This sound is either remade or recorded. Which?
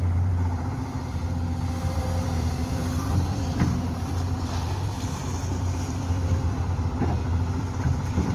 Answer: remade